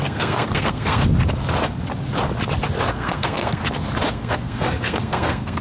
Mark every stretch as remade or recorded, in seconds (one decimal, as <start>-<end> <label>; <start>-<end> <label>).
0.0-1.0 remade; 1.0-2.9 recorded; 2.9-3.6 remade; 3.6-4.1 recorded; 4.1-5.6 remade